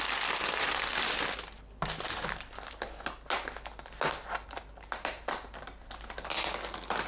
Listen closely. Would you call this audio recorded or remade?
recorded